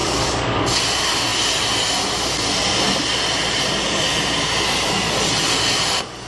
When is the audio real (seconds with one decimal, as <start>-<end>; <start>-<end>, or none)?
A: 0.6-6.3